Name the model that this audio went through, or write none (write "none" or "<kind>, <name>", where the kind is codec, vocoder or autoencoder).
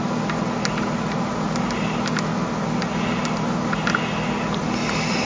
none